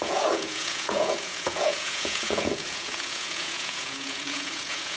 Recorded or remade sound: remade